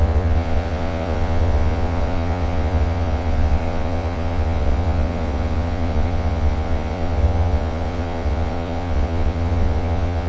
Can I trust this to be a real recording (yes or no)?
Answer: no